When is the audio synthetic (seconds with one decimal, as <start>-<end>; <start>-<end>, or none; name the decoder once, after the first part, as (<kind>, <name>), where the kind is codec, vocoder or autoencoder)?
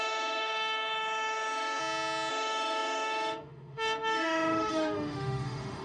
0.0-1.8 (autoencoder, DAC-VAE); 2.3-5.8